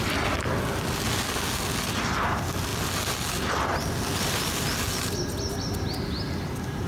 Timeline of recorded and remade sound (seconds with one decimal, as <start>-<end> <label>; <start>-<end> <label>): 0.0-6.9 recorded